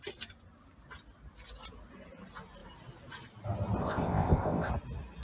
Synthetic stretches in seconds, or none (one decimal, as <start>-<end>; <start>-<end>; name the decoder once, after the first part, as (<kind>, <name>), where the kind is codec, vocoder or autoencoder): 3.8-4.7 (codec, ZipCodec)